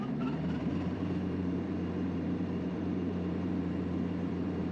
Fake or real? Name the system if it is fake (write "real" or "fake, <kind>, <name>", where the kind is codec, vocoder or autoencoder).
fake, vocoder, BigVGAN v2